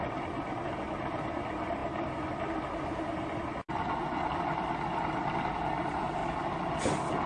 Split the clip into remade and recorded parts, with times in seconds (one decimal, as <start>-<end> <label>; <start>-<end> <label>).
0.0-7.3 recorded